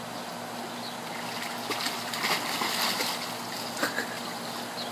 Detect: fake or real real